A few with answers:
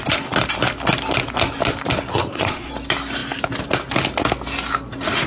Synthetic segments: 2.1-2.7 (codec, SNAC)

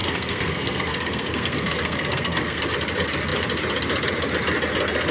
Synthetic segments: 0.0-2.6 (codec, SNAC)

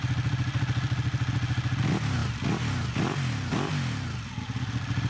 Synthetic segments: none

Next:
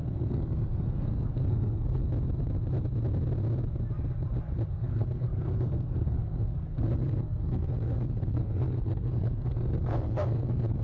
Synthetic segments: 0.0-2.0 (codec, SNAC); 4.7-10.8

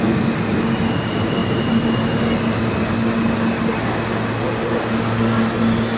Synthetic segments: none

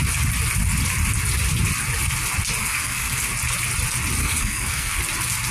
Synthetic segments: 2.6-3.3 (codec, SNAC); 4.2-5.0

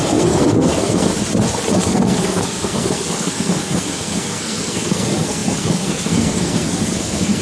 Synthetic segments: 0.0-1.1 (codec, SNAC); 1.7-7.4